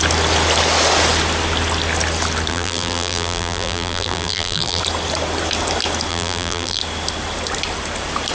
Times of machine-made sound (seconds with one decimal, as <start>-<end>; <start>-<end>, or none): 2.5-4.8; 6.1-6.8